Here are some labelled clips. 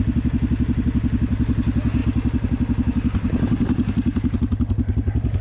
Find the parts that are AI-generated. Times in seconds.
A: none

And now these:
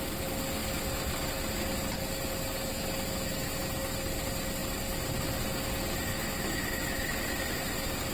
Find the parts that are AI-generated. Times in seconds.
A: 2.7-3.6 (autoencoder, DAC-VAE); 6.1-7.3

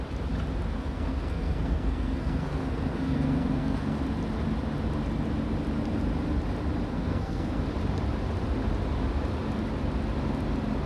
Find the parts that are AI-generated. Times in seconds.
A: 0.7-4.0 (codec, SNAC); 6.9-7.6

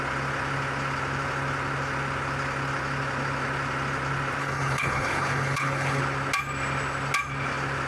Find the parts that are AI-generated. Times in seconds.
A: 4.4-6.0 (codec, HILCodec)

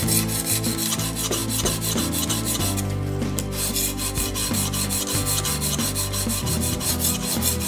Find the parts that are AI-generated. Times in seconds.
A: none

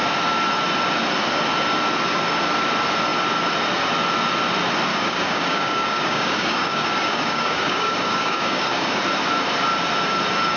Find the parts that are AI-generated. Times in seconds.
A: 4.9-9.0 (codec, DAC)

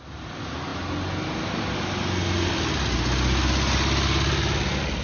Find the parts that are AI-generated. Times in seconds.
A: none

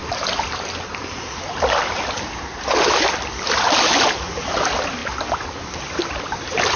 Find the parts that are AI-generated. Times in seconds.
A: 0.0-5.0 (vocoder, BigVGAN v2)